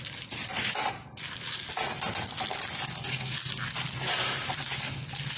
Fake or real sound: real